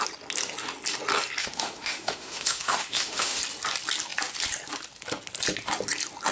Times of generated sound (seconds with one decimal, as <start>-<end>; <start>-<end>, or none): 1.4-3.4